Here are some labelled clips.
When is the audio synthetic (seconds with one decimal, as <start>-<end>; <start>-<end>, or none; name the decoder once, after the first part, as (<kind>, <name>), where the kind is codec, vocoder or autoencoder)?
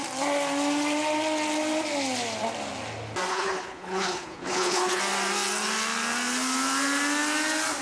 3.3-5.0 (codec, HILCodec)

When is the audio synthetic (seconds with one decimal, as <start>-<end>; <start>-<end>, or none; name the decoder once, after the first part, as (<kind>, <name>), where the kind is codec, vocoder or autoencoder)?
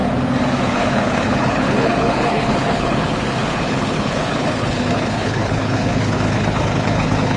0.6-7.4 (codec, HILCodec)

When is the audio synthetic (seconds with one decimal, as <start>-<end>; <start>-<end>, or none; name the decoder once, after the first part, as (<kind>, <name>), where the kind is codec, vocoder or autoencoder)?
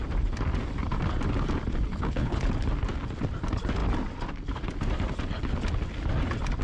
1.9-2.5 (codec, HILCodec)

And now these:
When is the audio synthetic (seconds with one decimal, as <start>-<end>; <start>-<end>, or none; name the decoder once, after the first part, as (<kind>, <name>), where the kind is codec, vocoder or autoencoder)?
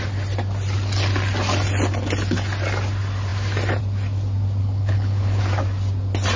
4.6-5.4 (codec, HILCodec)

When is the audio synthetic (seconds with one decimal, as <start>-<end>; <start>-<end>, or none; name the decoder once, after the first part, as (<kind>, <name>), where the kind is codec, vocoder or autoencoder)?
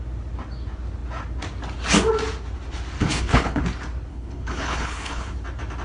3.0-3.6 (codec, HILCodec); 4.1-5.3